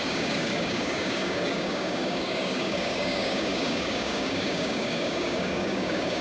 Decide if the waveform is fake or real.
fake